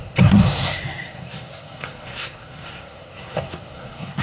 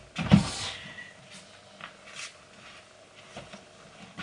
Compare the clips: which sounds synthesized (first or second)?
first